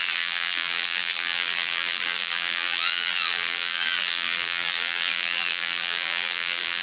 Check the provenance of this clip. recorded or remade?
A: remade